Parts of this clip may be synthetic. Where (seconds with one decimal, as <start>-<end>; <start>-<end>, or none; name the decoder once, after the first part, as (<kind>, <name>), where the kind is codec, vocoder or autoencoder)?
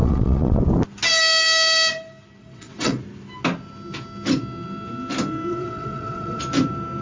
0.0-0.6 (vocoder, WaveNeXt); 2.4-3.0; 5.5-6.4